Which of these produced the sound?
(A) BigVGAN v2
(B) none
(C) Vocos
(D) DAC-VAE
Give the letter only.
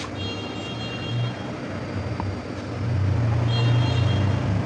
B